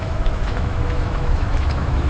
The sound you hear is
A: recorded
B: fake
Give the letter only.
B